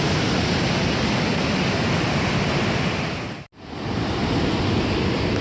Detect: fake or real real